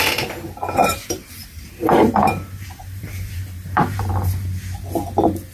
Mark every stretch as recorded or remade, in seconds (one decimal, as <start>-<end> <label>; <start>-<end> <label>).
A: 0.0-0.8 recorded; 0.8-4.1 remade; 4.1-5.5 recorded